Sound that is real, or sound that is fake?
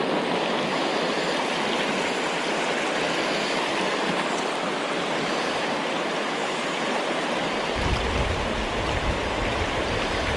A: real